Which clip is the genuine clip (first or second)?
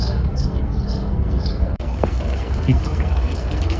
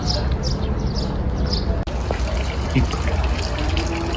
second